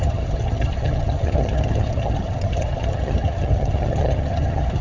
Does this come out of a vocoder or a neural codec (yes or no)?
yes